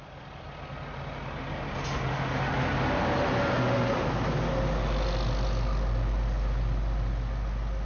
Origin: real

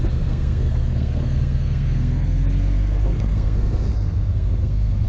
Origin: fake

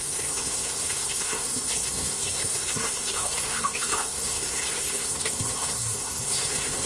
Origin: fake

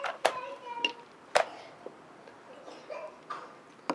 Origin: real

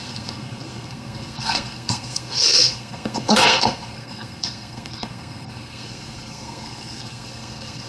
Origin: fake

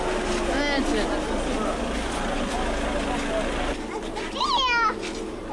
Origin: real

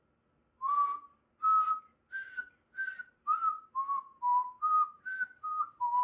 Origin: real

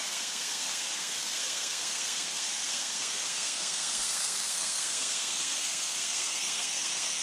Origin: fake